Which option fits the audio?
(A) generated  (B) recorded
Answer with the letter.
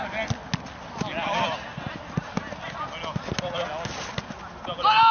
B